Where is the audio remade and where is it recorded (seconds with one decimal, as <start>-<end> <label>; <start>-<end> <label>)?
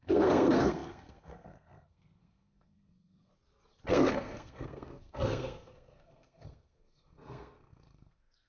0.0-3.3 remade; 3.3-3.9 recorded; 3.9-8.5 remade